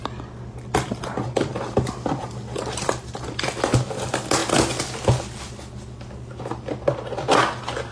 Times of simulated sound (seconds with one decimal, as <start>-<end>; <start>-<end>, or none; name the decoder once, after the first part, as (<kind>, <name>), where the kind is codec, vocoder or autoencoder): none